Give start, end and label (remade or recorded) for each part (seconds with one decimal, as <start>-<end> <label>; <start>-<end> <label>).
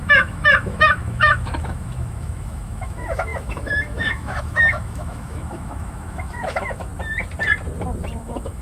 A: 0.0-6.9 remade; 6.9-8.2 recorded; 8.2-8.6 remade